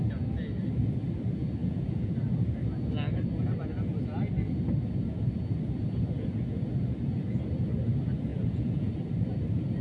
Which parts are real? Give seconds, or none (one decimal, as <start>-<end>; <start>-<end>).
0.0-1.6; 2.1-8.3; 8.9-9.8